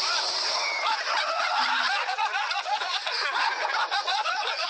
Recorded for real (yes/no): no